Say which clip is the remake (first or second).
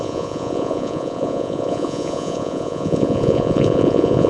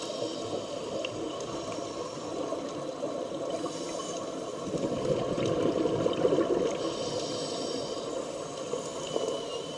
first